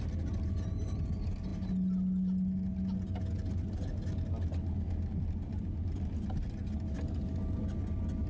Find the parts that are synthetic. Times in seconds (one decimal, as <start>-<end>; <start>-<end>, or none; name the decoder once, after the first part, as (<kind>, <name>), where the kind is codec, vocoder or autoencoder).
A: none